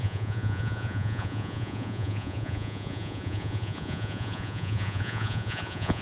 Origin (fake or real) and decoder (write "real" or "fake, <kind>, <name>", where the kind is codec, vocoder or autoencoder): fake, vocoder, Vocos